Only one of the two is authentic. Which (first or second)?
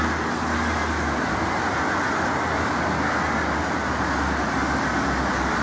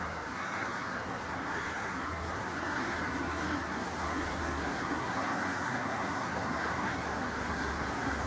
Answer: first